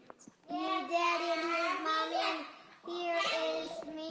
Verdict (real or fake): real